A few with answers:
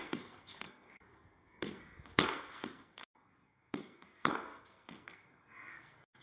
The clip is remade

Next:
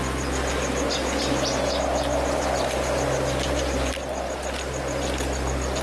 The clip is recorded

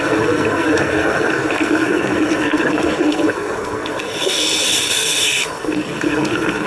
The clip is remade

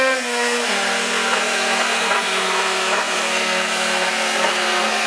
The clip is remade